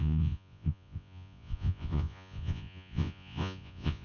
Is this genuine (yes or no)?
no